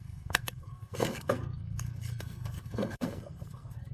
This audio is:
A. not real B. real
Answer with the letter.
A